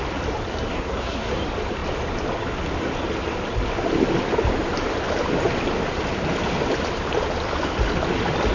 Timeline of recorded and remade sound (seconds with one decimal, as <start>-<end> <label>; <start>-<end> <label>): 0.0-0.7 recorded; 0.7-1.4 remade; 1.4-8.5 recorded